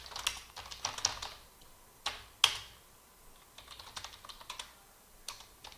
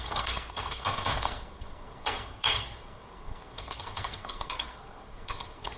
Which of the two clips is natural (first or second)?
first